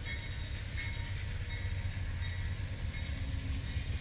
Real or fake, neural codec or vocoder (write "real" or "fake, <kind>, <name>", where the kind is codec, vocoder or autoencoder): real